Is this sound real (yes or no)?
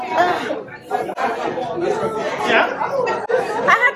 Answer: yes